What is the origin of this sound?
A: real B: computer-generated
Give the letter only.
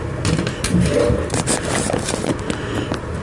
A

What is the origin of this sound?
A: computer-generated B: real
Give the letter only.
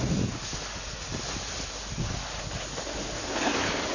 B